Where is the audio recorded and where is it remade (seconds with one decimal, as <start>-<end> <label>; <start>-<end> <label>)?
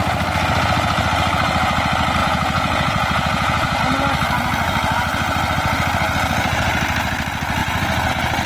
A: 0.0-2.2 recorded; 2.2-3.8 remade; 3.8-8.5 recorded